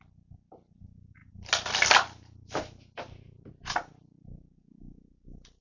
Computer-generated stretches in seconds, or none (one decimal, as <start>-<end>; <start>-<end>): none